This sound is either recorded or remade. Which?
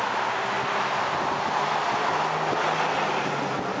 recorded